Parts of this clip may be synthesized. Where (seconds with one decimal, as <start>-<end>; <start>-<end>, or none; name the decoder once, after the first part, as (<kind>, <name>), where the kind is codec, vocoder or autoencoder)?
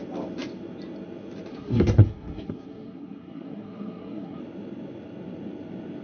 1.5-4.4 (codec, SNAC)